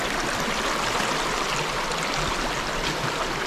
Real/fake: real